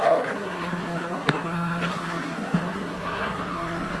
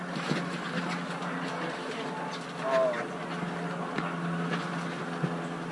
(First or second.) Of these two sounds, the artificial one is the first